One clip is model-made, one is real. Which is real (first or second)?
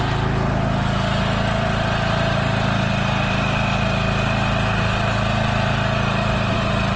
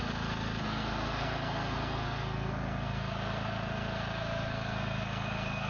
first